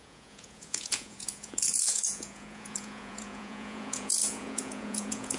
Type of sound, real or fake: fake